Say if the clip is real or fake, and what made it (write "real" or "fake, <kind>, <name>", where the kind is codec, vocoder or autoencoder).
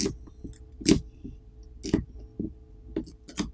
real